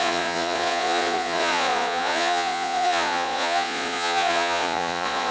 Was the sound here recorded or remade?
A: remade